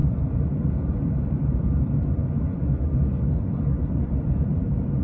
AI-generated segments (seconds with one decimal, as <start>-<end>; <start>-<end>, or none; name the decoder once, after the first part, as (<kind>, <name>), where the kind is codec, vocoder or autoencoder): 0.0-2.2 (vocoder, BigVGAN v2); 3.9-5.0